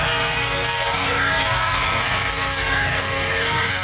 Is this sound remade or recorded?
remade